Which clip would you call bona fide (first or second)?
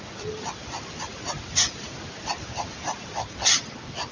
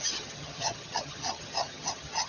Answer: first